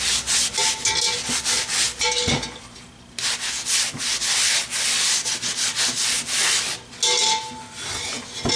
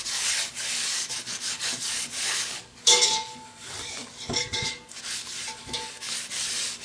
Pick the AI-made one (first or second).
second